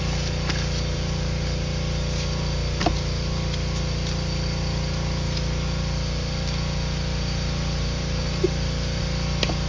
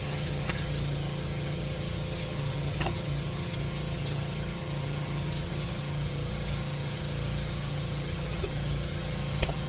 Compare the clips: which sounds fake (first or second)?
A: second